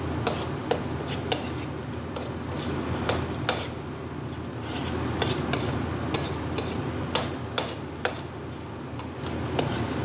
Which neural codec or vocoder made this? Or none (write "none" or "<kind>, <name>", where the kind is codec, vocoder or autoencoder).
none